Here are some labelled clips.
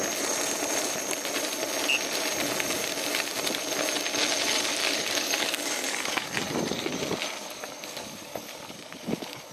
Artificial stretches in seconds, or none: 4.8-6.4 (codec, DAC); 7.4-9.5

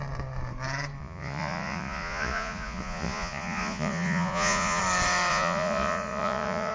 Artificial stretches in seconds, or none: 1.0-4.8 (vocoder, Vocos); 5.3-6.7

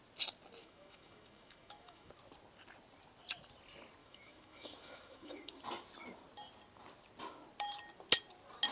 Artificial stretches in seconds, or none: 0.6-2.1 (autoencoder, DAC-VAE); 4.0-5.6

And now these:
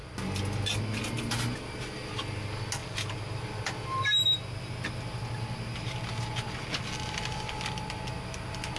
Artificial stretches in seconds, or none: none

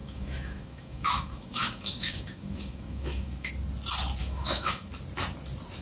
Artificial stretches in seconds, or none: 0.0-3.5 (autoencoder, DAC-VAE); 4.2-4.9

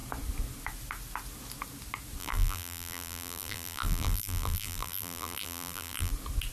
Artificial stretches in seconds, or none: 2.2-6.1 (vocoder, BigVGAN v2)

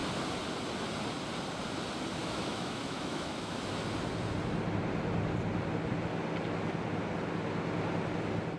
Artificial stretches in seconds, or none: 2.2-3.5 (autoencoder, DAC-VAE)

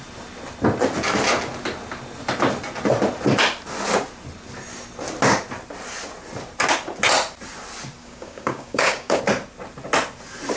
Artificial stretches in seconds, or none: 8.0-9.2 (codec, DAC)